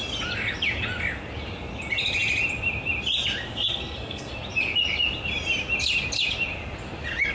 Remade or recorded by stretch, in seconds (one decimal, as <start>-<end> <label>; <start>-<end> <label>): 0.0-3.5 recorded; 3.5-4.3 remade; 4.3-7.3 recorded